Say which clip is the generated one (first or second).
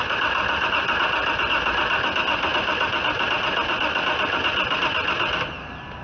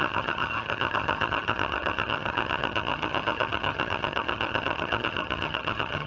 second